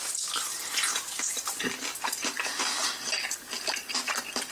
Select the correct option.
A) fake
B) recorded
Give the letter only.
B